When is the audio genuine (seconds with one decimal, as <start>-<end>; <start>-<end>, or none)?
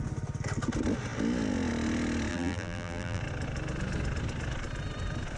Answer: 0.0-2.3; 3.2-5.4